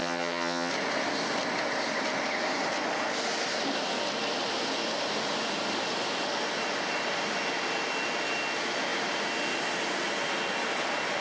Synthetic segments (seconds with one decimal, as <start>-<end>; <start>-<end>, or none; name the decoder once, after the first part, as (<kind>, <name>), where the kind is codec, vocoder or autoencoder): 0.0-0.7 (vocoder, HiFi-GAN)